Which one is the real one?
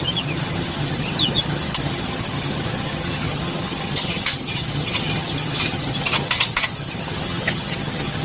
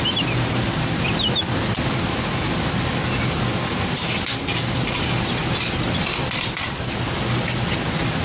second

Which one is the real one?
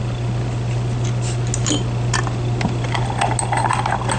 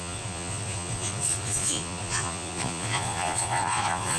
first